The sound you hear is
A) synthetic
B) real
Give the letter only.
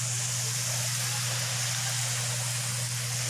B